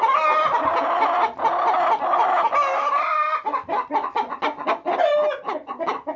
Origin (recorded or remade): recorded